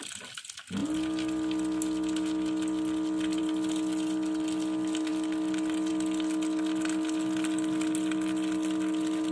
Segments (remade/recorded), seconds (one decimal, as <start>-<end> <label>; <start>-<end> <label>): 0.0-9.3 recorded